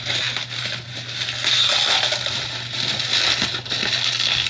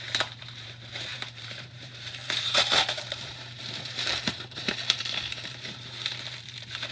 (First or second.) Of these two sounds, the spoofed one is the second